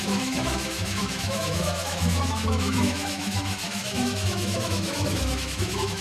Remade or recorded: remade